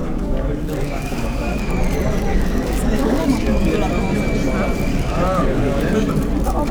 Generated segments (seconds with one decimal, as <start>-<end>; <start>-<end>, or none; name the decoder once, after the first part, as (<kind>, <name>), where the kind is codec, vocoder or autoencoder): 0.0-1.7 (codec, DAC); 2.3-3.7; 4.9-6.1